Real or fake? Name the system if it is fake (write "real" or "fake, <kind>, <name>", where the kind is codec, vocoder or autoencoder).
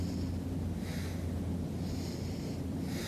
real